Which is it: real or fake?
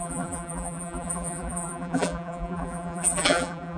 fake